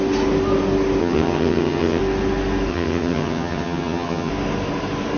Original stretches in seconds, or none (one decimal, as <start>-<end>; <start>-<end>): 0.0-1.0; 2.0-2.7; 4.3-5.2

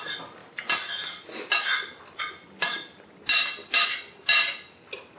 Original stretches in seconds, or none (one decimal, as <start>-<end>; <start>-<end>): 0.0-5.2

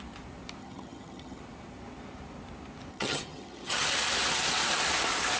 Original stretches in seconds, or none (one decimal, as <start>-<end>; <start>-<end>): 0.0-0.6; 1.4-2.9; 3.9-5.4

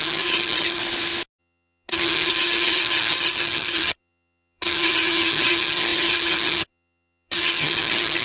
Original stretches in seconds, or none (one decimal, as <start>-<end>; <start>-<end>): 0.8-1.4

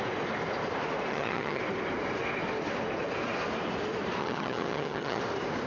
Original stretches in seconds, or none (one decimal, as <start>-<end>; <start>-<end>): 0.0-1.1; 1.6-4.2; 5.2-5.7

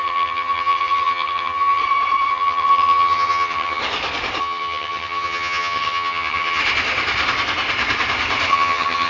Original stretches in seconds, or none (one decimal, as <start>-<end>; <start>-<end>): 1.8-2.3; 3.8-4.4; 6.6-8.5

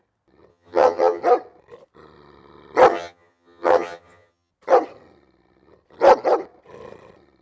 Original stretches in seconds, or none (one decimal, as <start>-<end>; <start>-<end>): 0.0-0.5; 1.2-2.9; 4.5-7.4